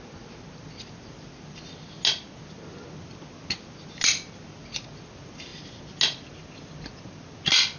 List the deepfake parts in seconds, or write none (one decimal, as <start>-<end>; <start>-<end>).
none